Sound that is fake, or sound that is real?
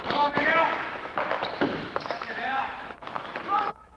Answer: fake